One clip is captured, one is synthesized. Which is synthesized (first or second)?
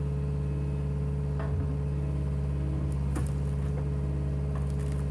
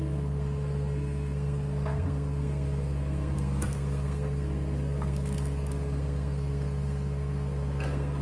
second